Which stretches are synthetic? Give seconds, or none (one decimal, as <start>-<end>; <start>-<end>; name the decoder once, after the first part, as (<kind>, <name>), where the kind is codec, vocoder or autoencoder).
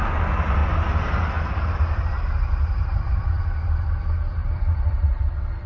0.6-2.0 (vocoder, BigVGAN v2); 4.4-5.2